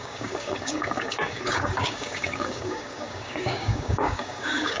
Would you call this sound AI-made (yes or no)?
yes